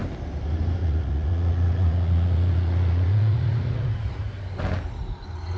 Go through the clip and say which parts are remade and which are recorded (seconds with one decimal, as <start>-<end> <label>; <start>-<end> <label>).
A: 0.0-0.8 recorded; 0.8-4.1 remade; 4.1-5.6 recorded